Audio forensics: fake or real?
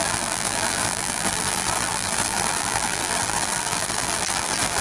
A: fake